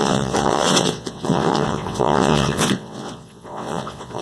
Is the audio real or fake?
fake